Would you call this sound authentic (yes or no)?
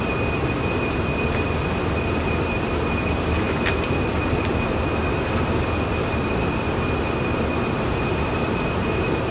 yes